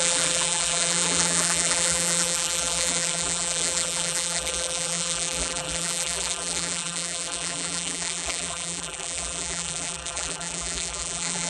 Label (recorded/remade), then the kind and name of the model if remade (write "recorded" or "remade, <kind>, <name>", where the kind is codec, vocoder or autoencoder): remade, vocoder, BigVGAN v2